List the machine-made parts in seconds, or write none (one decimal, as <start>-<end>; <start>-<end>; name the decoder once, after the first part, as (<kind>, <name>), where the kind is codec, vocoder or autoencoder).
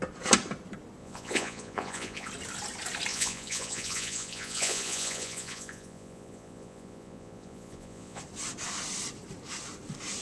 1.0-2.3 (vocoder, Vocos); 3.1-8.2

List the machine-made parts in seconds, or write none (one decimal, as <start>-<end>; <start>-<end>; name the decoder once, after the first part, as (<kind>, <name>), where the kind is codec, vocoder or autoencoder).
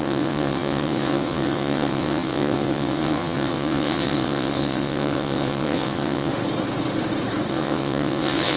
0.0-6.3 (vocoder, WaveNeXt); 7.5-8.6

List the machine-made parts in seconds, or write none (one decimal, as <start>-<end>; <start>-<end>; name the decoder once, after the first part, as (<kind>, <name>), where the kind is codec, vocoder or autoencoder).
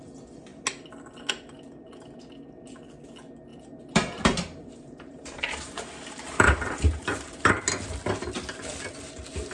3.5-7.5 (vocoder, BigVGAN v2)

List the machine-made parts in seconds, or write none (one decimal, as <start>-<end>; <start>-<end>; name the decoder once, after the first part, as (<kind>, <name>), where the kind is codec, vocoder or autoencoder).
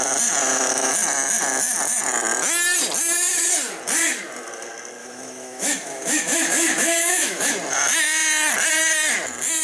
0.4-0.9 (autoencoder, DAC-VAE); 5.0-7.5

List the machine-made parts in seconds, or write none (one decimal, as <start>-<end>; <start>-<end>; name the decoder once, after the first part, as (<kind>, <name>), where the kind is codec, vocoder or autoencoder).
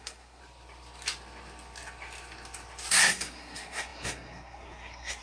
0.0-0.4 (codec, SNAC); 2.9-5.2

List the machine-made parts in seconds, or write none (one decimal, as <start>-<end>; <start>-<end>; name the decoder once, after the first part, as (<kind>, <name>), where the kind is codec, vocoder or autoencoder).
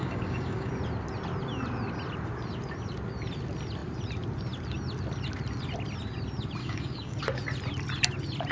0.0-0.7 (codec, DAC); 6.6-7.2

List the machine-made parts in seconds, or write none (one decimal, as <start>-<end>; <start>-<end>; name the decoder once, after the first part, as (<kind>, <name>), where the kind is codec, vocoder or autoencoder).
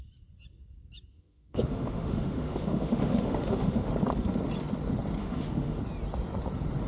1.1-3.9 (autoencoder, DAC-VAE); 5.2-5.8